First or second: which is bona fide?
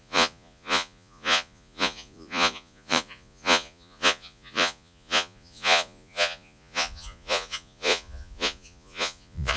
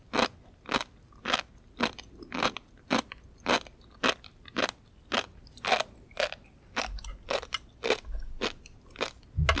second